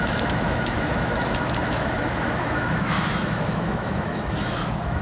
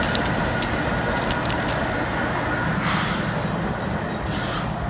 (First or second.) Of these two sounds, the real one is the second